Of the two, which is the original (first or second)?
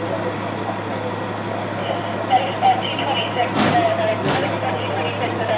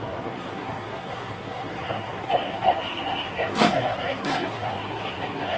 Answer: first